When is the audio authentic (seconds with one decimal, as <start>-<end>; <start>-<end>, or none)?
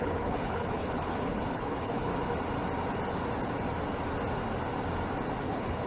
2.1-5.4